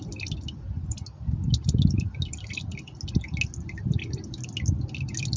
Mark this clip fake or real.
real